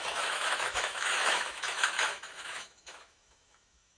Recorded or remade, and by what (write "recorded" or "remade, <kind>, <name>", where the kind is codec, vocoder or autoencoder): remade, autoencoder, DAC-VAE